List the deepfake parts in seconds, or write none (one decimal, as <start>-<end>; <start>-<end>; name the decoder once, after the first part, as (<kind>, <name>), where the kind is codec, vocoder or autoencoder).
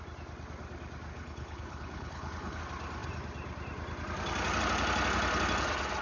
1.1-2.6 (codec, HILCodec)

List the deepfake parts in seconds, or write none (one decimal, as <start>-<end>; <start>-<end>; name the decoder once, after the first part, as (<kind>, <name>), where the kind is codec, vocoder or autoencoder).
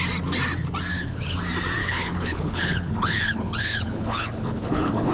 0.9-1.4 (codec, HILCodec); 1.8-5.1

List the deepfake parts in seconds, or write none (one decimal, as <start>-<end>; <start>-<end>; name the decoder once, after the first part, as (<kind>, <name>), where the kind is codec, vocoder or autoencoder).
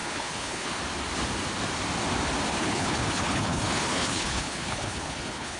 0.0-0.8 (codec, HILCodec); 2.6-5.6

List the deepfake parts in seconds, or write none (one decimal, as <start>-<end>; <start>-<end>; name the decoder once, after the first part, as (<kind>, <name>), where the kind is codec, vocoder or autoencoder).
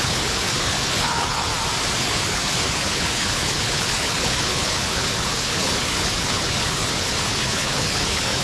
0.0-1.5 (codec, HILCodec); 2.0-8.4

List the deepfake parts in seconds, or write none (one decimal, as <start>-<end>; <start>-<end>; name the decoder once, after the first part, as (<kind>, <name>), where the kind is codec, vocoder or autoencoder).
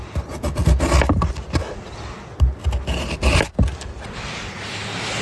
none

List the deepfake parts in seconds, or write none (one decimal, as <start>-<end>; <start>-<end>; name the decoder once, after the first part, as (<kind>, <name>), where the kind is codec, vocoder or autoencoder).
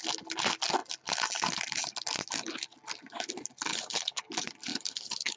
3.7-4.3 (codec, HILCodec); 4.7-5.4